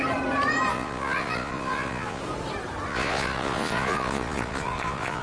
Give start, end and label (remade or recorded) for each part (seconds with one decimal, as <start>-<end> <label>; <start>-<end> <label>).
0.0-0.7 recorded; 0.7-2.2 remade; 2.2-2.9 recorded; 2.9-5.2 remade